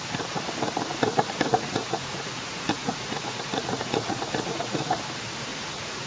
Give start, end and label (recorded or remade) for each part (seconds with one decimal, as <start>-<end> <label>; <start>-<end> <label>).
0.0-1.5 recorded; 1.5-4.8 remade; 4.8-5.5 recorded; 5.5-6.1 remade